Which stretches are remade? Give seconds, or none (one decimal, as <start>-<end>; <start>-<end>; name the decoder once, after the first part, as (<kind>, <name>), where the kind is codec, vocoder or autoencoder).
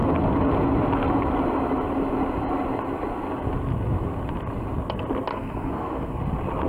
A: 5.3-6.2 (codec, SNAC)